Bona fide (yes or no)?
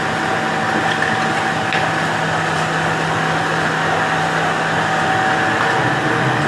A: yes